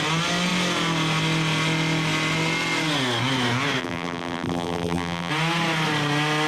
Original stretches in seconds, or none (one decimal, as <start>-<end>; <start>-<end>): 0.0-3.8; 5.3-6.5